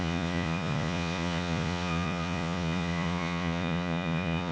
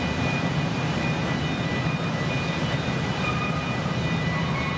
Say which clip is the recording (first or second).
second